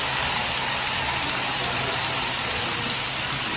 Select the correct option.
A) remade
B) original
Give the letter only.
B